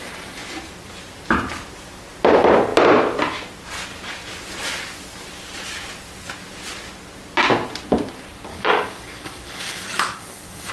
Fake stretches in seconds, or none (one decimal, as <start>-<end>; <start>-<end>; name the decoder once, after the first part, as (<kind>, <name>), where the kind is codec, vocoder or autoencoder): 8.5-10.7 (codec, DAC)